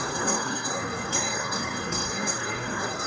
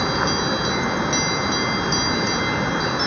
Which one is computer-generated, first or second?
first